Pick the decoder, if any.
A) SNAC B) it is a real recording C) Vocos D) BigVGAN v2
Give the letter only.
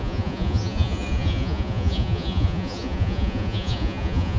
C